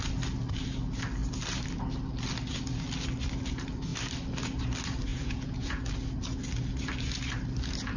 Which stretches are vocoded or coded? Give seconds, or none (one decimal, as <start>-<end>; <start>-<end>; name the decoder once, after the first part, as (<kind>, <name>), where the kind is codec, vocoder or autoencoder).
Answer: 5.1-5.8 (vocoder, Vocos)